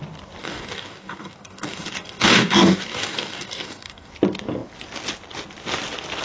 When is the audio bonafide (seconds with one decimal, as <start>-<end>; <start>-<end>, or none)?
0.0-0.4; 4.1-6.2